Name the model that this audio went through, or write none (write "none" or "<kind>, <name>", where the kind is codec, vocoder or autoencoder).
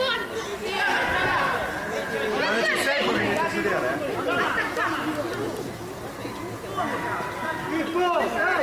none